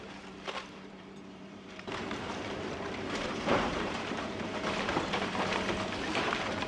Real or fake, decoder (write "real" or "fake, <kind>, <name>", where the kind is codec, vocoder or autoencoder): fake, vocoder, BigVGAN v2